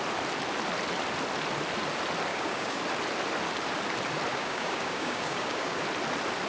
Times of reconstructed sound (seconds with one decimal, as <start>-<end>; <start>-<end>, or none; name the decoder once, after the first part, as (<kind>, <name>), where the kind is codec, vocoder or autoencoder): 2.3-2.8 (codec, DAC); 4.3-5.8